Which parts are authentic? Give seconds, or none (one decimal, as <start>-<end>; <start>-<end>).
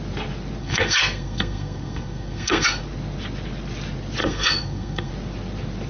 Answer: 0.0-0.6; 2.8-4.2; 5.1-5.9